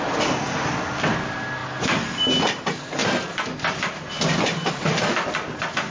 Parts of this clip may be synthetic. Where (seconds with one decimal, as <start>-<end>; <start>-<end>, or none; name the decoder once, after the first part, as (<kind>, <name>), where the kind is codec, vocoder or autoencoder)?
none